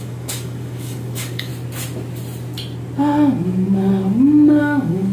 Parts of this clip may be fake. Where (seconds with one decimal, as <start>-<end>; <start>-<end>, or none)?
0.0-1.5; 4.6-5.1